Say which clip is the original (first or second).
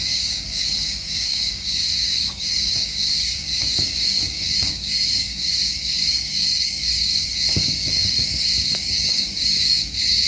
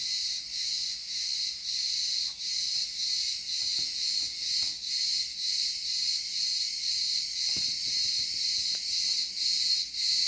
second